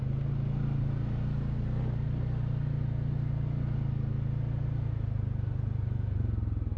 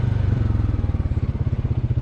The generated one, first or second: second